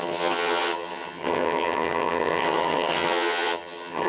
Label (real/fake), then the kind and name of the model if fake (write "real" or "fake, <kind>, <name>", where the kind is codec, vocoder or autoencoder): fake, vocoder, HiFi-GAN